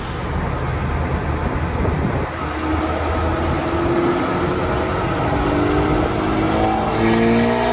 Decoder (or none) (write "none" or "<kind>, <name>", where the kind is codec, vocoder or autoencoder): none